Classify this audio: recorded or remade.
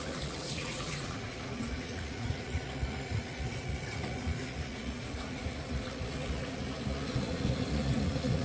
remade